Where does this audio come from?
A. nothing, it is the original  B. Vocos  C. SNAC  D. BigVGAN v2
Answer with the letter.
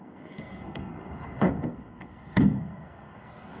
C